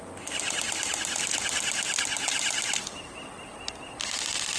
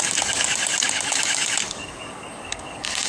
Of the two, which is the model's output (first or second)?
second